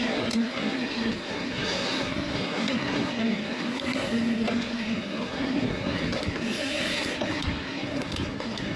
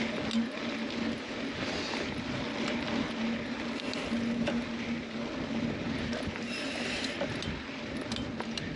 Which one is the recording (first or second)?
second